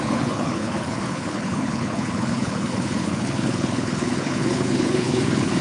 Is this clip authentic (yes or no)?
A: no